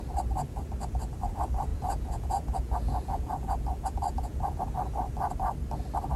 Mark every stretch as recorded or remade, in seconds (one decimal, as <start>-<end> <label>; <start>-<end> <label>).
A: 0.0-1.7 recorded; 1.7-4.6 remade; 4.6-6.2 recorded